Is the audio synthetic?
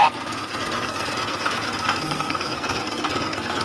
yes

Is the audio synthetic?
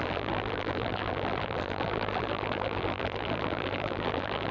yes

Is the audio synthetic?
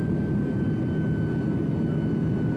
no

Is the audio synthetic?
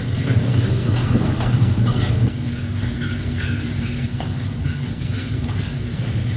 yes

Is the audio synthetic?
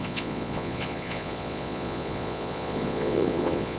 yes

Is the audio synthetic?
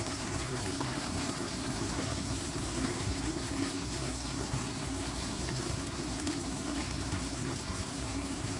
yes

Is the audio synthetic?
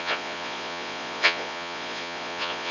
yes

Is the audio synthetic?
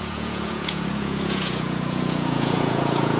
yes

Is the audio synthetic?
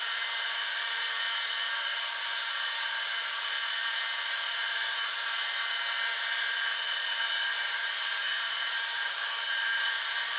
yes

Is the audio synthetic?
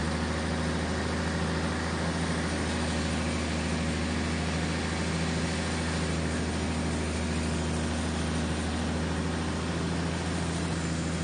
no